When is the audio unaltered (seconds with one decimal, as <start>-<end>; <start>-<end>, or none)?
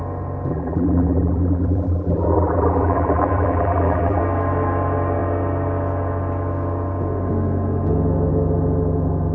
0.0-0.5; 4.2-9.3